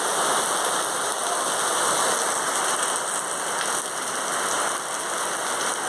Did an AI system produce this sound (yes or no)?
no